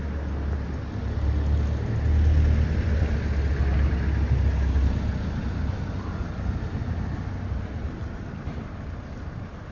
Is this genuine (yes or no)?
yes